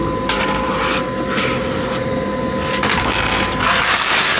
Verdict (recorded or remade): recorded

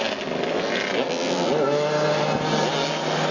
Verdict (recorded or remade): recorded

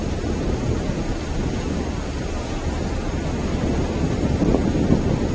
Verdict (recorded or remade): recorded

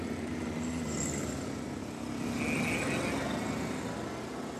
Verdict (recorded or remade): recorded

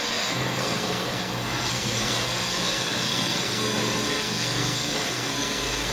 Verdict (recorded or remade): remade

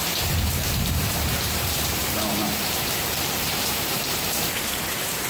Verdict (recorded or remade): remade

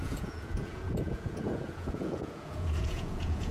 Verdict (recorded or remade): remade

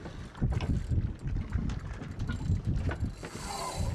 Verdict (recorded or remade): recorded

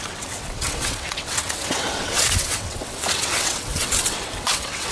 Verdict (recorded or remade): remade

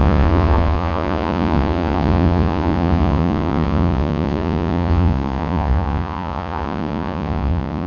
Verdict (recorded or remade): remade